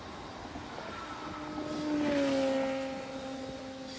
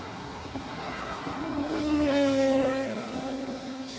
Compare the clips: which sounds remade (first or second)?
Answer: second